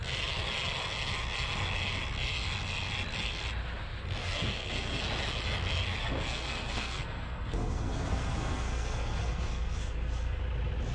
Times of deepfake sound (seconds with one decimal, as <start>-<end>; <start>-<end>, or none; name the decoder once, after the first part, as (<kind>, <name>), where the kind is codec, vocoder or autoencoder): 4.2-5.0 (codec, SNAC); 6.0-10.4